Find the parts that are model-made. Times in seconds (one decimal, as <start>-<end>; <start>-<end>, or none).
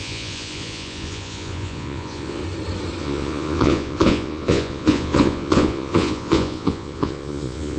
0.0-2.4; 3.0-7.8